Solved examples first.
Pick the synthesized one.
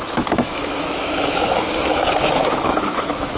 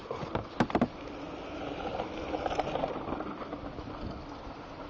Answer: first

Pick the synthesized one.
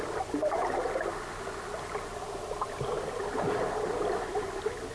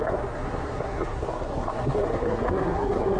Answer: second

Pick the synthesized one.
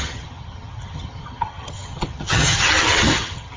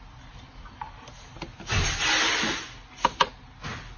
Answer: first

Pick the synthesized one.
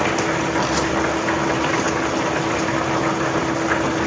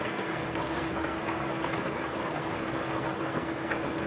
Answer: second